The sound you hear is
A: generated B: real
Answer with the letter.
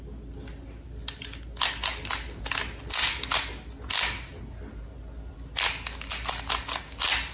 B